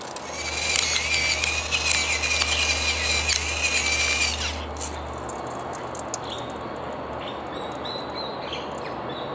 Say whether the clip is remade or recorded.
recorded